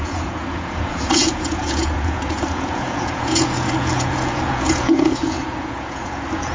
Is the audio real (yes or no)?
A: no